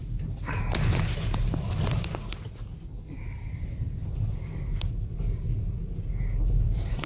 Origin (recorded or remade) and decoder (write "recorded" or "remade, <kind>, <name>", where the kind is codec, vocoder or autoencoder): recorded